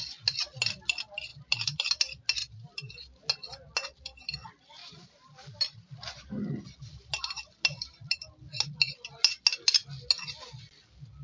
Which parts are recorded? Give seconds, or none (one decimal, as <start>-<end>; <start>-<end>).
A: 0.0-1.3; 1.9-2.4; 2.9-4.8; 5.9-11.2